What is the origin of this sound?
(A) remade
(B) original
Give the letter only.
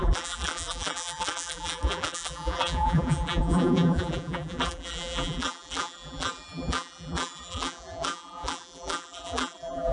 A